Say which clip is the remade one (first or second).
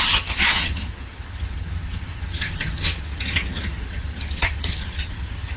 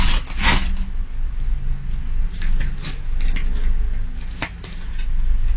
first